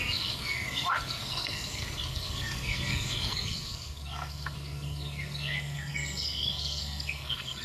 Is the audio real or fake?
fake